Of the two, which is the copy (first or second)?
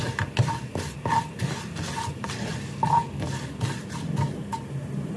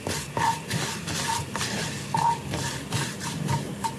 second